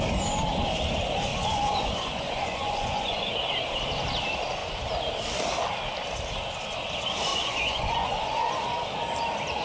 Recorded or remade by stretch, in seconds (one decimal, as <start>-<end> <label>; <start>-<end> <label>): 0.0-1.3 recorded; 1.3-3.3 remade; 3.3-7.3 recorded; 7.3-8.5 remade; 8.5-9.6 recorded